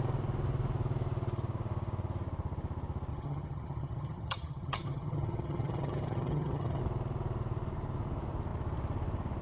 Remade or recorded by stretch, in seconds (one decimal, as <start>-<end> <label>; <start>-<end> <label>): 0.0-3.1 recorded; 3.1-6.8 remade; 6.8-9.4 recorded